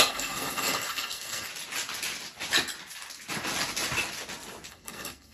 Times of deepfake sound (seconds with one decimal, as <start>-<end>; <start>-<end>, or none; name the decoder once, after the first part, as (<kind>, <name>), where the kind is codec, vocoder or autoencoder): 0.0-1.5 (codec, SNAC); 4.7-5.3

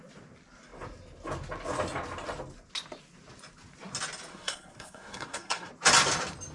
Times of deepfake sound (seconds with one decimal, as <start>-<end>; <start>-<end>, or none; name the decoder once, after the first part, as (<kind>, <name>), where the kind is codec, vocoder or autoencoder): 4.3-5.7 (codec, SNAC)

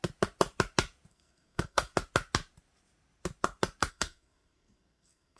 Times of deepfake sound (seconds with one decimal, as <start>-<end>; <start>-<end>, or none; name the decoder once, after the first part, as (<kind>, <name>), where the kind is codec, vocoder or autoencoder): 1.1-1.9 (codec, SNAC); 3.9-5.4

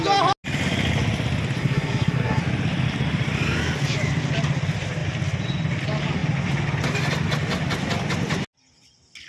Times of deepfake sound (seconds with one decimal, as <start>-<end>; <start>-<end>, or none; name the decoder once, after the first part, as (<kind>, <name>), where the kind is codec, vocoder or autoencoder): 1.6-2.4 (codec, SNAC)

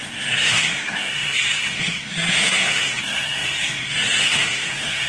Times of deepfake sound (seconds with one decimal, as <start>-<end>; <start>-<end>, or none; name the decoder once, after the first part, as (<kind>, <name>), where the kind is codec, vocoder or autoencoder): 0.0-5.1 (codec, SNAC)